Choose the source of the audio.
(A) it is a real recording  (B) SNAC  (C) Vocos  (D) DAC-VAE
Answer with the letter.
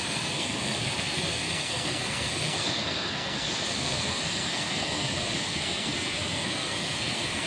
B